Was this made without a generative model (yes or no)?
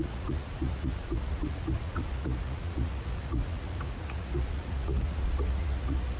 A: no